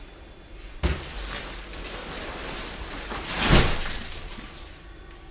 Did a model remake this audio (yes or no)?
no